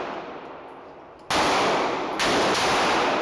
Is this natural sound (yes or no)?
yes